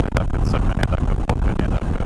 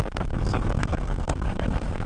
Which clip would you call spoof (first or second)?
second